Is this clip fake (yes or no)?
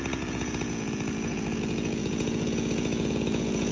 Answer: yes